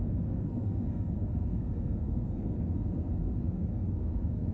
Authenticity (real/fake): fake